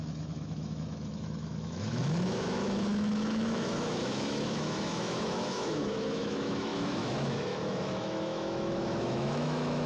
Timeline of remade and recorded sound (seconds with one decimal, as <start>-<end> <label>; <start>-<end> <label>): 0.0-9.9 remade

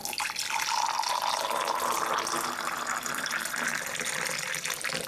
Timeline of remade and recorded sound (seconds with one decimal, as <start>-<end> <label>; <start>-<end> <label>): 0.0-5.1 recorded

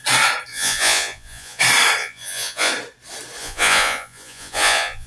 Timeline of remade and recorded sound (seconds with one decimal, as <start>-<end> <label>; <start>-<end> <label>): 0.0-0.5 recorded; 0.5-1.6 remade; 1.6-2.0 recorded; 2.0-2.7 remade; 2.7-3.4 recorded; 3.4-5.1 remade

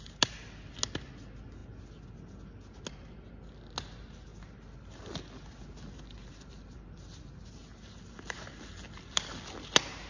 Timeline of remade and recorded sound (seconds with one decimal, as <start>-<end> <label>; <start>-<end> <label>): 0.0-10.1 recorded

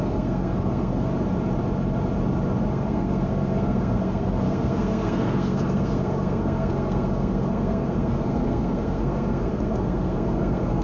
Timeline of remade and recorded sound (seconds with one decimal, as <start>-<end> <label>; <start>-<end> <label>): 0.0-1.1 remade; 1.1-2.7 recorded; 2.7-10.8 remade

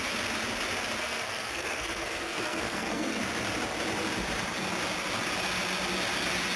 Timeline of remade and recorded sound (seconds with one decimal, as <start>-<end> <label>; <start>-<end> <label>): 0.0-1.0 recorded; 1.0-3.2 remade; 3.2-6.6 recorded

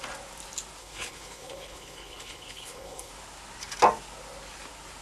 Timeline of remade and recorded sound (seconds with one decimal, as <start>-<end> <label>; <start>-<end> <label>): 0.0-0.8 recorded; 0.8-3.1 remade; 3.1-5.0 recorded